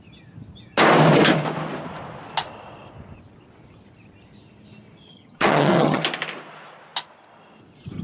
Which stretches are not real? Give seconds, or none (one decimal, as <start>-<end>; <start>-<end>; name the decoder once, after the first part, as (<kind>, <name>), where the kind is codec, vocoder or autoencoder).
5.1-6.0 (vocoder, HiFi-GAN)